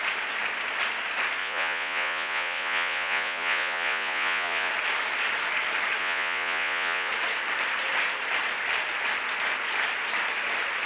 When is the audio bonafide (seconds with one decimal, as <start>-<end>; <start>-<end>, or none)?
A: 0.0-1.4; 4.7-6.0; 7.1-10.9